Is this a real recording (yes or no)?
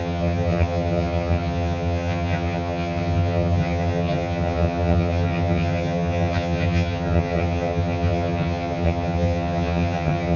no